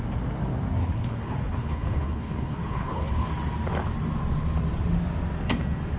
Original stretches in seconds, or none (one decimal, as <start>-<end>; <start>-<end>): 0.0-0.8; 3.3-6.0